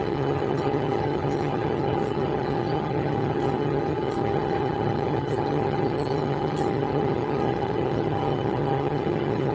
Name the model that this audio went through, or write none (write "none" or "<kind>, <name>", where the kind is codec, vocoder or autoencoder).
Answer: vocoder, HiFi-GAN